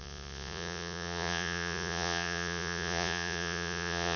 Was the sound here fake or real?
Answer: fake